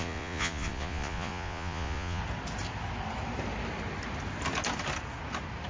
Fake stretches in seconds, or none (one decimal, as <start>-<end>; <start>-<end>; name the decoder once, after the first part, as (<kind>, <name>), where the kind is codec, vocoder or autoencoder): 0.0-2.2 (vocoder, Vocos)